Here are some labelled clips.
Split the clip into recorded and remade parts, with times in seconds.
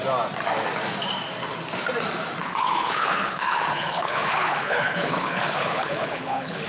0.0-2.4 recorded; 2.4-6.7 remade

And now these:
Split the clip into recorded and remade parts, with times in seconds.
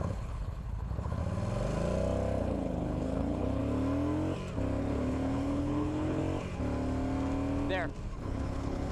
0.0-1.2 remade; 1.2-2.4 recorded; 2.4-3.6 remade; 3.6-4.8 recorded; 4.8-6.2 remade; 6.2-8.2 recorded; 8.2-8.9 remade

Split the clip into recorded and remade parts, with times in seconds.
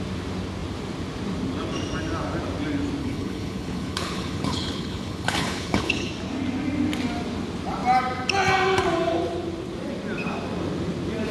0.0-3.0 recorded; 3.0-6.1 remade; 6.1-11.3 recorded